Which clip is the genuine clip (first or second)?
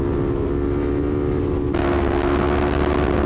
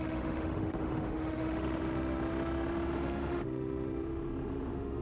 first